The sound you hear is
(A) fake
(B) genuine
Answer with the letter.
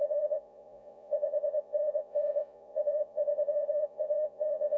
A